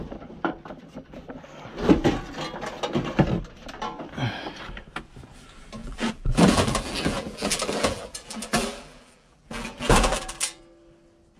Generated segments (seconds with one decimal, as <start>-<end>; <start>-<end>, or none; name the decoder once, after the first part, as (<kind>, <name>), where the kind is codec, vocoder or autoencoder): 5.8-10.6 (vocoder, BigVGAN v2)